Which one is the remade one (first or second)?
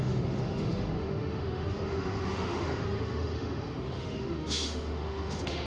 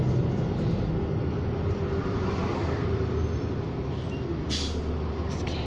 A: first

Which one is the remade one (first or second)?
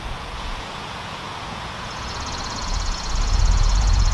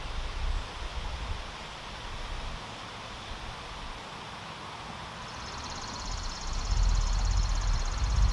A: first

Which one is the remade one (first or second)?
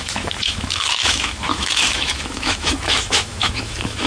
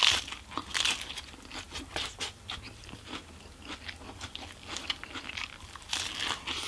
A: first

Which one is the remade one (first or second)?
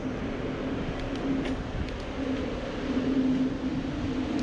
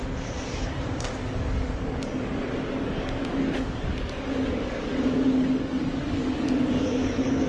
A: second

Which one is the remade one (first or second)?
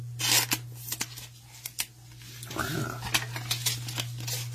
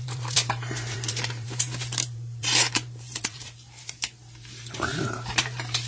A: second